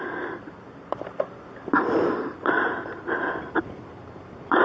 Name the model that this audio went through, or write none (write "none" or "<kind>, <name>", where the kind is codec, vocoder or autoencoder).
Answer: vocoder, BigVGAN v2